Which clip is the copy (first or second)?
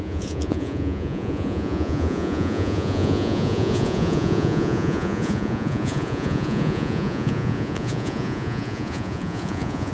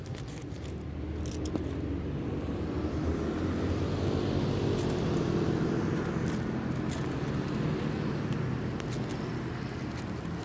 first